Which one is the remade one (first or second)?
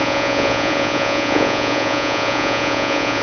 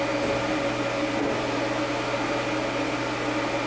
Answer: first